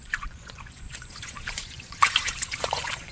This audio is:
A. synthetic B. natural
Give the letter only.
A